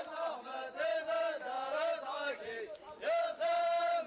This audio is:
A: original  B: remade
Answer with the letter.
A